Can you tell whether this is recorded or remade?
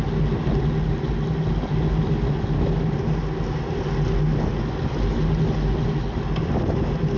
recorded